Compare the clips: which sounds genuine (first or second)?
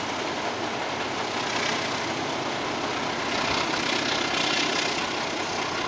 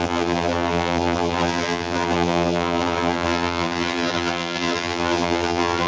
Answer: first